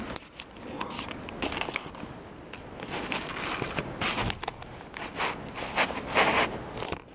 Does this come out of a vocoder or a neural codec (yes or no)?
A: no